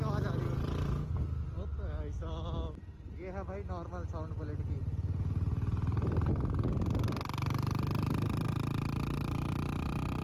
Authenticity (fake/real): real